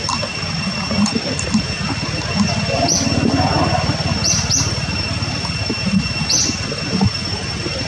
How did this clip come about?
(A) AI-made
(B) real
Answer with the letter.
B